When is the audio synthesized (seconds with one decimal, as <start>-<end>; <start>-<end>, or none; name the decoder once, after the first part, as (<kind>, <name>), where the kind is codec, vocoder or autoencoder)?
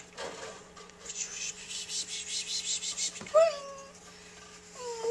0.5-1.9 (vocoder, Vocos)